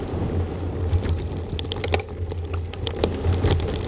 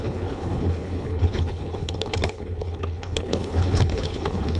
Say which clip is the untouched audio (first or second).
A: first